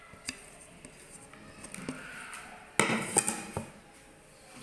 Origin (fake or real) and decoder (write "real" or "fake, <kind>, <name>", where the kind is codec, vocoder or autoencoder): real